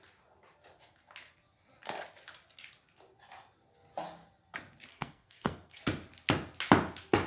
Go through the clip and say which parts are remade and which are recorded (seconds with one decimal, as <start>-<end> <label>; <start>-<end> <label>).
0.0-4.9 recorded; 4.9-5.8 remade; 5.8-7.3 recorded